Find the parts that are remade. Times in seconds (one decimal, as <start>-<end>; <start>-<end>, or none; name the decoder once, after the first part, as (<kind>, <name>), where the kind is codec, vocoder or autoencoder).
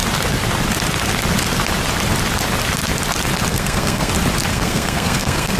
3.5-4.1 (codec, SNAC); 4.5-5.6